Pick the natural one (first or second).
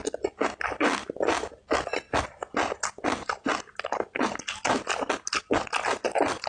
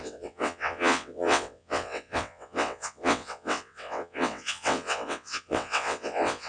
first